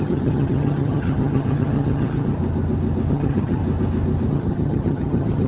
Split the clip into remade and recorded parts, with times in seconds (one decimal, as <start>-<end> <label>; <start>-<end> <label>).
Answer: 0.0-2.4 remade; 2.4-3.1 recorded; 3.1-3.6 remade; 3.6-4.3 recorded; 4.3-5.5 remade